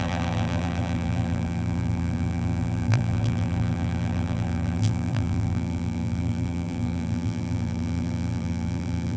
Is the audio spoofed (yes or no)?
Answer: yes